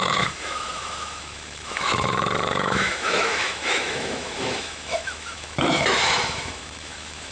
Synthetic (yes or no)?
yes